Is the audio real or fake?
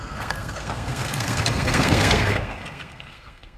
fake